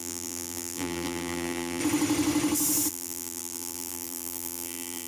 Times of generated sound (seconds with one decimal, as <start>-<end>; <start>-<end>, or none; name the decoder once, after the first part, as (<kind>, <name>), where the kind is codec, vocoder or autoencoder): 0.0-1.8 (vocoder, BigVGAN v2); 2.9-5.1